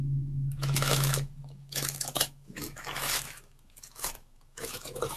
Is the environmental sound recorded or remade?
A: remade